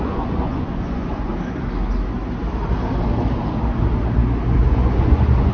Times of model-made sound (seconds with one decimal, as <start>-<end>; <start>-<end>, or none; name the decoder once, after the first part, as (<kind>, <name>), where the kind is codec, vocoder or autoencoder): 0.0-1.3 (vocoder, Vocos); 4.6-5.5